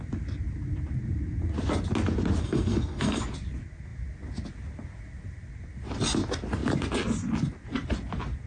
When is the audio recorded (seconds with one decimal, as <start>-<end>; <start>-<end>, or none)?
0.0-2.4; 3.2-8.5